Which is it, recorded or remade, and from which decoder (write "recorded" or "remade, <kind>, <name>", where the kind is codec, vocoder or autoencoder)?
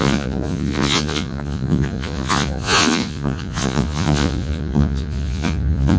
remade, vocoder, Vocos